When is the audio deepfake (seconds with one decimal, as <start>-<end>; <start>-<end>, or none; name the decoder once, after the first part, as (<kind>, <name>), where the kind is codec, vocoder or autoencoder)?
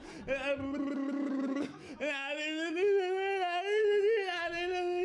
0.8-3.8 (autoencoder, DAC-VAE)